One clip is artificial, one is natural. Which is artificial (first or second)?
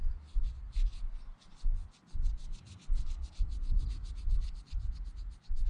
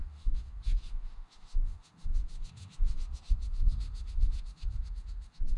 second